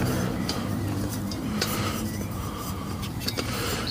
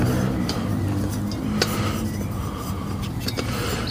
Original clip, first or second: second